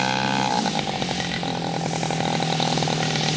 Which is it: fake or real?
real